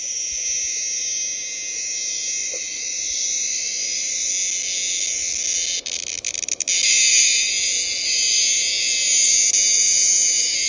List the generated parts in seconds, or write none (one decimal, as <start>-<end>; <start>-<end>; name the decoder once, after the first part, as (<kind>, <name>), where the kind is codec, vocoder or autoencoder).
2.4-4.3 (vocoder, Vocos)